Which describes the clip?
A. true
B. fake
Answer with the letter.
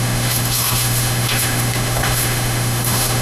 B